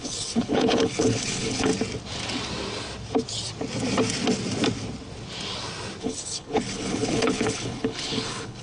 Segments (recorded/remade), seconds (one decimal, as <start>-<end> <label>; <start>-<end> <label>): 0.0-1.7 remade; 1.7-6.0 recorded; 6.0-8.6 remade